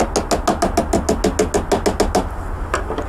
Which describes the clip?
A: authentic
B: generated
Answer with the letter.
A